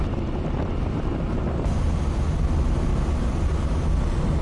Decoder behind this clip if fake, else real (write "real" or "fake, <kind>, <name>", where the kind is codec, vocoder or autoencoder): real